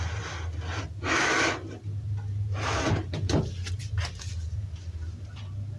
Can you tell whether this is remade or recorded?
recorded